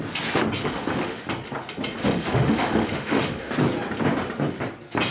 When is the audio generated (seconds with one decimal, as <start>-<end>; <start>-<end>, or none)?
0.6-1.2; 2.0-3.5